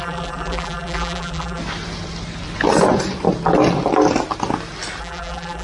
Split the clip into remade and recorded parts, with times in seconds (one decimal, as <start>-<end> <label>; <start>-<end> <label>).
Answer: 0.0-1.6 remade; 1.6-5.0 recorded; 5.0-5.6 remade